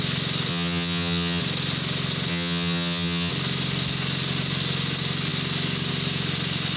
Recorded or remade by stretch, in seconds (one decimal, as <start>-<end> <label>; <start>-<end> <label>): 0.0-0.5 recorded; 0.5-1.4 remade; 1.4-2.3 recorded; 2.3-3.3 remade; 3.3-6.8 recorded